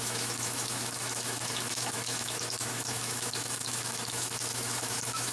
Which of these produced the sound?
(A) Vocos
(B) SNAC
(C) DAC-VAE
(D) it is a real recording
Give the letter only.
C